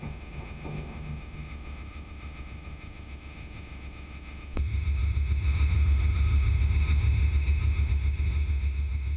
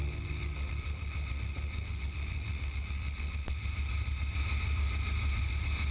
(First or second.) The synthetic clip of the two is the first